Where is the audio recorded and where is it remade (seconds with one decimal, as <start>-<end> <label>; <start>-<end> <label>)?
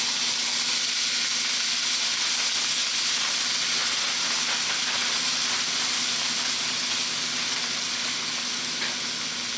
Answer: 0.0-9.6 recorded